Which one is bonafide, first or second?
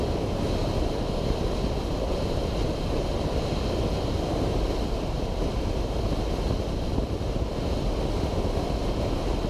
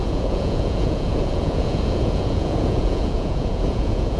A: first